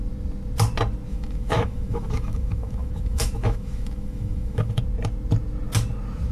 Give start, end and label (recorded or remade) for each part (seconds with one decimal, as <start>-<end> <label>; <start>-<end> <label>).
0.0-1.1 recorded; 1.1-4.8 remade; 4.8-6.3 recorded